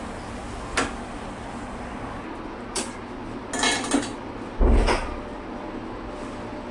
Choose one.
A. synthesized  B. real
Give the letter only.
B